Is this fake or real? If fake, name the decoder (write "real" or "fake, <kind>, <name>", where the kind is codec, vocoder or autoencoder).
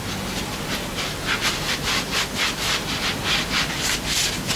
real